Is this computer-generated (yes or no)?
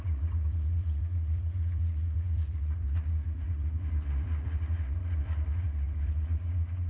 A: yes